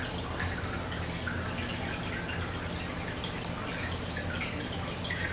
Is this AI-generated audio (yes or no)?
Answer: no